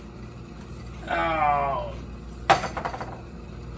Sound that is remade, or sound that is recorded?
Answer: recorded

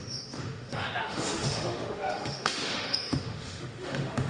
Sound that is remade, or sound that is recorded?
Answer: remade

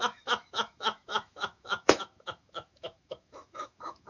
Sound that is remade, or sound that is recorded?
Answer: remade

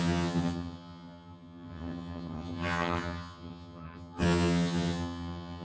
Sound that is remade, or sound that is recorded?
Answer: remade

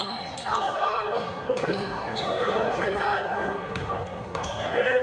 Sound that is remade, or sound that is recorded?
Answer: remade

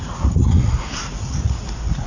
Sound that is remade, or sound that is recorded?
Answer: remade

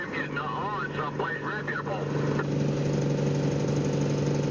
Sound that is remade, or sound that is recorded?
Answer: recorded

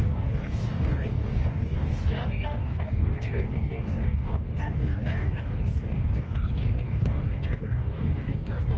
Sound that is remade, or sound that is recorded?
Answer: remade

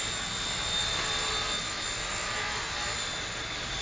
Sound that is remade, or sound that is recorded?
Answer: recorded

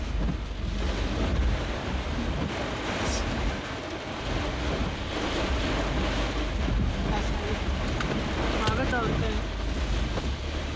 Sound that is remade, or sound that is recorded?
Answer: recorded